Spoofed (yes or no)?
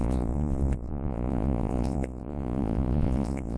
yes